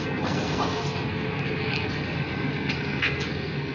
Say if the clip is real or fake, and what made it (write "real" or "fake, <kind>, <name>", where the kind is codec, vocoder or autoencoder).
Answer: fake, codec, SNAC